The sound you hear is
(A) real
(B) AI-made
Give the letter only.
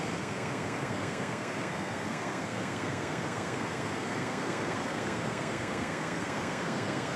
B